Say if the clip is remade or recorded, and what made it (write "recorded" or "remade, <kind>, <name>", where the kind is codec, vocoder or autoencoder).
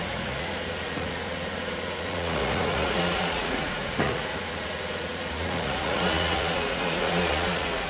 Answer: remade, vocoder, Vocos